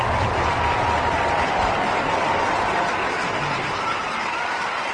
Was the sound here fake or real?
real